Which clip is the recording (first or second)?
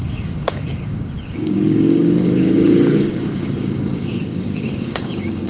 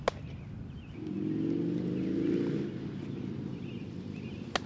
second